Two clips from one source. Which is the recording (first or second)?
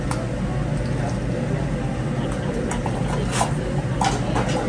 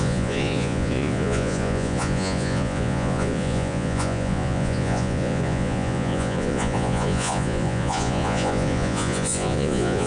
first